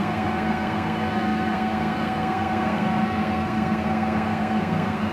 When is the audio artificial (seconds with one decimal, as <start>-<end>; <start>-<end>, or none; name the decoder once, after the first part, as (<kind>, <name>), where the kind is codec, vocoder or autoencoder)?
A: 0.0-5.1 (codec, SNAC)